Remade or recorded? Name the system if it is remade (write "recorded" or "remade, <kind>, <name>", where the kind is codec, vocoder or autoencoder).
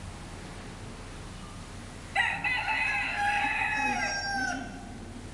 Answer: recorded